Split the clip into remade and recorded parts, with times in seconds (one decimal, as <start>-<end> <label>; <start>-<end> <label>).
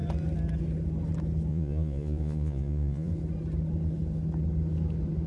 0.0-1.5 recorded; 1.5-3.1 remade; 3.1-5.3 recorded